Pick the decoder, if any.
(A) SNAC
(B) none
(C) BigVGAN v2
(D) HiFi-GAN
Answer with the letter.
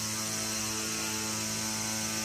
B